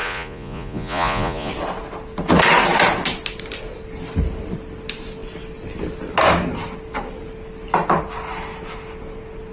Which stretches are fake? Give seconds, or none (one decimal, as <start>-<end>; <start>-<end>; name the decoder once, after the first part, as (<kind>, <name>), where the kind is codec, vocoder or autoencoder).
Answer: 0.0-1.5 (vocoder, Vocos)